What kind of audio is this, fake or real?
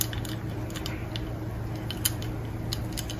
real